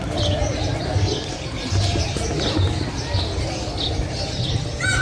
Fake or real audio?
real